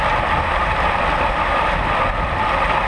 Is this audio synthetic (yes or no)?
no